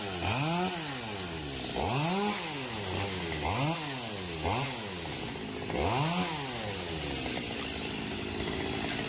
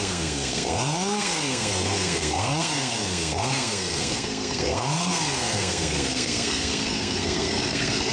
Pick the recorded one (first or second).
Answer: first